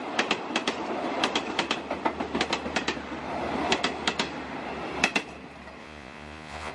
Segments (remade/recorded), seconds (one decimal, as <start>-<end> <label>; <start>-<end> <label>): 0.0-5.8 recorded; 5.8-6.7 remade